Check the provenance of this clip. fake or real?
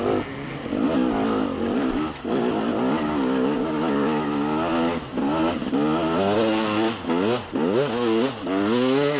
real